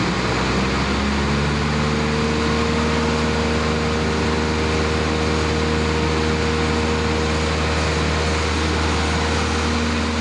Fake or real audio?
real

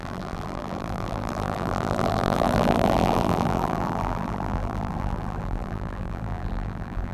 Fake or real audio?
fake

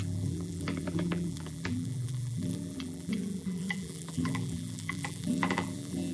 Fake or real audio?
fake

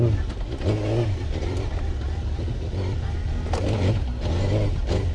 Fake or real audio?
real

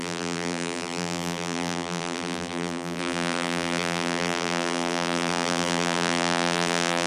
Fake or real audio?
fake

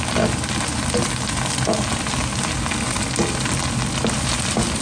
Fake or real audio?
real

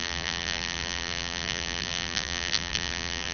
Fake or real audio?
fake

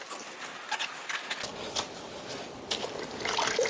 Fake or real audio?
real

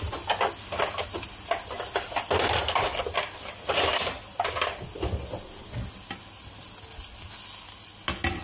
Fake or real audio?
real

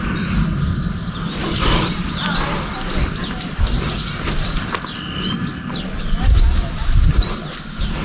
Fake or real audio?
fake